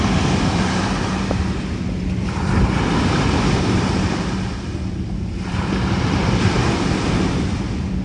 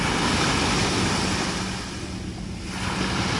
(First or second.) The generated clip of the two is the first